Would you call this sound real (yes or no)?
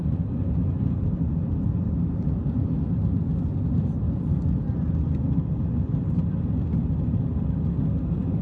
yes